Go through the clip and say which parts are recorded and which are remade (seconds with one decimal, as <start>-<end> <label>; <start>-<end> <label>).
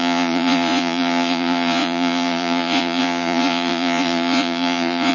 0.0-5.1 remade